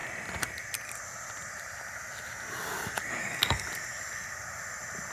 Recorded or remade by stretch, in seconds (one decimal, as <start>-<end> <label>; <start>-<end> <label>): 0.0-3.2 recorded; 3.2-3.7 remade; 3.7-5.1 recorded